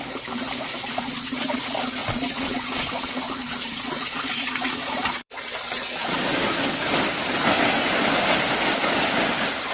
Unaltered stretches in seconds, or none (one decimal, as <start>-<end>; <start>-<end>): 0.0-0.8; 1.6-2.0; 6.2-9.7